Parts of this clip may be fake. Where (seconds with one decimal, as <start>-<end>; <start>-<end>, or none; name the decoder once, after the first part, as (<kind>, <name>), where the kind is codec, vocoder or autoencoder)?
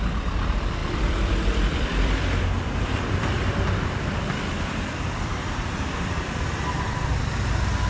0.8-4.4 (vocoder, BigVGAN v2); 5.3-6.5